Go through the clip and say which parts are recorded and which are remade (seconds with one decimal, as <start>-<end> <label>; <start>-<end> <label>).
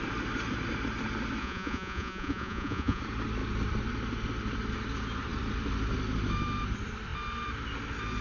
0.0-1.4 recorded; 1.4-3.0 remade; 3.0-8.2 recorded